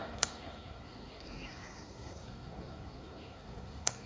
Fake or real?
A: fake